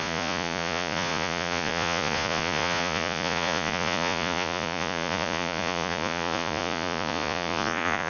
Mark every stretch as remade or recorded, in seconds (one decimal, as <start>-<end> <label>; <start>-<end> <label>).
0.0-8.1 remade